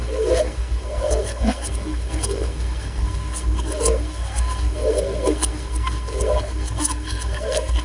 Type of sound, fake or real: fake